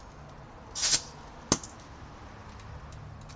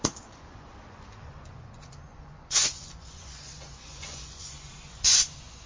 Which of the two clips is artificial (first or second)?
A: second